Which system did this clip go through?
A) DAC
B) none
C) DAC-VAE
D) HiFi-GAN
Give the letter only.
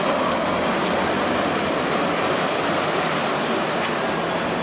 B